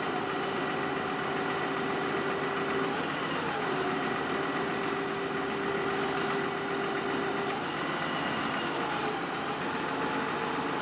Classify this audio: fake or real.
real